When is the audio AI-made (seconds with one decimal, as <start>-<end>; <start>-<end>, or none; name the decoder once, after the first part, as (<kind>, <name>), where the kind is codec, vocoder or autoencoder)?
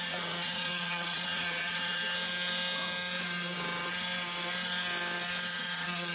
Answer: 0.0-2.0 (vocoder, Vocos); 5.5-6.1